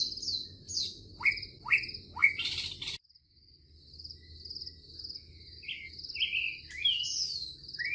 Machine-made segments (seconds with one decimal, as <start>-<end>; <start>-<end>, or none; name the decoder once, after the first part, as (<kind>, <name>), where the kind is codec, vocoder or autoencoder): none